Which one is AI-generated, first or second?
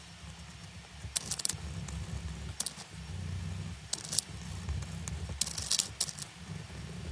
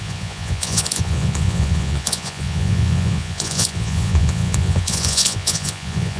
second